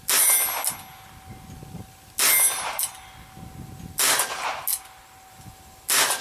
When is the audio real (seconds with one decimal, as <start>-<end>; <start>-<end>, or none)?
0.0-6.2